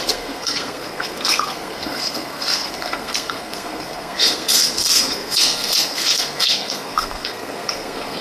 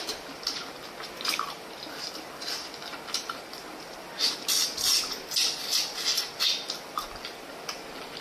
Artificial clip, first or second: first